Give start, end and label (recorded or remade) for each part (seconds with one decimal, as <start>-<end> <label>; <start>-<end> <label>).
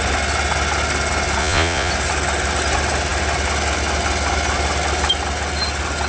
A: 0.0-1.4 recorded; 1.4-1.9 remade; 1.9-6.1 recorded